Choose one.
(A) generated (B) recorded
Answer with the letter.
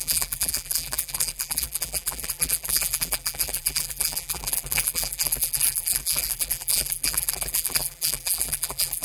A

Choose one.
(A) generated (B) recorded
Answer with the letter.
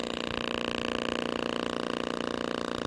B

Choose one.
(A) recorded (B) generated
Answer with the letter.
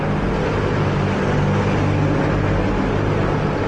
A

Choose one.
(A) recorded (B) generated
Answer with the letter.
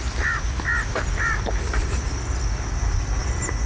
A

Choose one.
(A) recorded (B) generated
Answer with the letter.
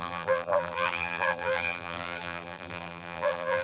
B